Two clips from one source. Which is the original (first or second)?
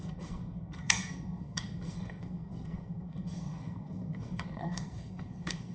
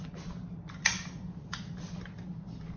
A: second